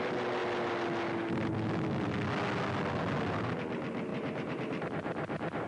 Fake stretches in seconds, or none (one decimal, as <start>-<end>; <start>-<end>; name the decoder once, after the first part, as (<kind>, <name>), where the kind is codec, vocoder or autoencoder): 4.1-5.7 (vocoder, BigVGAN v2)